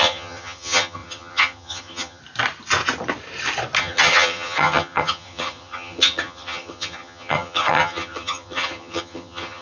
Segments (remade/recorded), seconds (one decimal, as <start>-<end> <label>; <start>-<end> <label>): 0.0-2.2 remade; 2.2-3.8 recorded; 3.8-9.6 remade

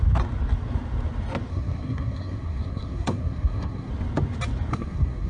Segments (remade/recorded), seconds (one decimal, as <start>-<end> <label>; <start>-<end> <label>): 0.0-1.5 recorded; 1.5-3.9 remade; 3.9-4.7 recorded; 4.7-5.3 remade